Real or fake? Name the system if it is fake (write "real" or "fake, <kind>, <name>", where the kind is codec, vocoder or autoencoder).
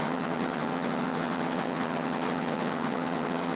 fake, vocoder, HiFi-GAN